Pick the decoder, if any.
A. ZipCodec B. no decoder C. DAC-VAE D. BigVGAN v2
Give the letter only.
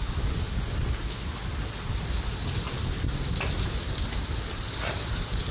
B